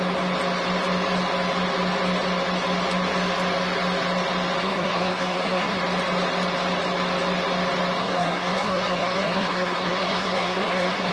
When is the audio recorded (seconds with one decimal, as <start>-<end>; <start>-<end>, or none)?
0.0-4.6; 5.8-8.0